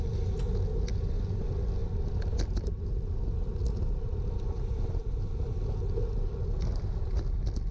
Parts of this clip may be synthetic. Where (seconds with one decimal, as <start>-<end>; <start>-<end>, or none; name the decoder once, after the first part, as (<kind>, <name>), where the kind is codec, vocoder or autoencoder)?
none